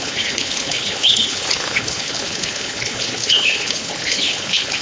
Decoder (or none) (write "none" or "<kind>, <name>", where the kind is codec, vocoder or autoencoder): codec, HILCodec